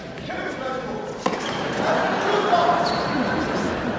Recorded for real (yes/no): yes